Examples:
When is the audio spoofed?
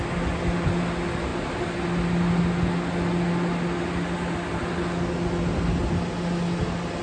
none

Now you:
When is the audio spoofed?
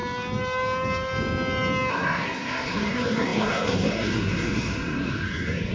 1.9-5.7 (codec, SNAC)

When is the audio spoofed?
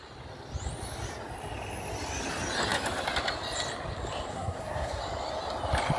4.3-5.0 (codec, SNAC)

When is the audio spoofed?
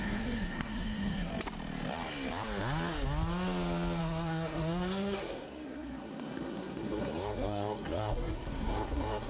0.0-1.3 (codec, SNAC); 4.0-9.3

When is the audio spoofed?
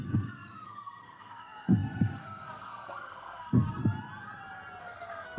0.0-3.8 (codec, SNAC); 4.8-5.4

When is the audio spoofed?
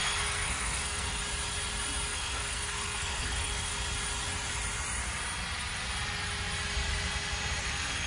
0.0-1.2 (codec, SNAC); 2.1-3.7; 7.6-8.1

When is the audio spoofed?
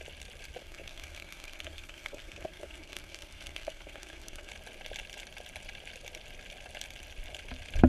0.6-4.5 (codec, SNAC)